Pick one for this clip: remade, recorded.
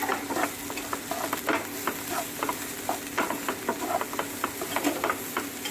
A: recorded